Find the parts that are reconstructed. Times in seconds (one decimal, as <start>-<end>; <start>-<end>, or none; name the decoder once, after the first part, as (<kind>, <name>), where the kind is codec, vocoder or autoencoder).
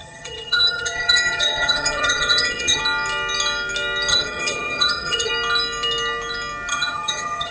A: 0.0-2.8 (vocoder, HiFi-GAN); 4.1-5.3; 6.7-7.5